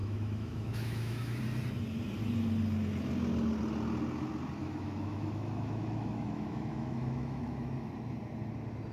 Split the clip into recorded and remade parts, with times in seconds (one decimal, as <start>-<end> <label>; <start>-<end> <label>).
0.0-1.4 remade; 1.4-4.6 recorded; 4.6-7.9 remade; 7.9-8.9 recorded